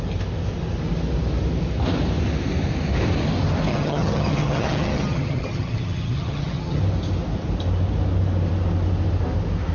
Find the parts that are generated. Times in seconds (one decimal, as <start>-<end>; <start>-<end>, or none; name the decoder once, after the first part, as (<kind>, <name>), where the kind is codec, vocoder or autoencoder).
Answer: 3.7-6.8 (vocoder, HiFi-GAN)